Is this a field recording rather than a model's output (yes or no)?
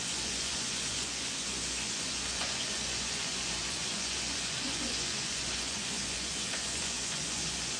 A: no